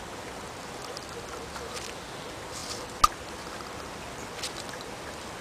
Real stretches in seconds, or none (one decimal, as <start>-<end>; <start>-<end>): 0.0-5.4